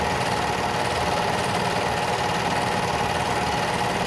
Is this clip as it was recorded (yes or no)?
yes